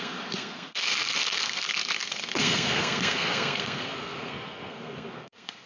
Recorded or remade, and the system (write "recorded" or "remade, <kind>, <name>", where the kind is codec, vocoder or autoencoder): remade, codec, SNAC